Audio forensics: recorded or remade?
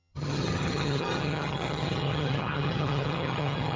remade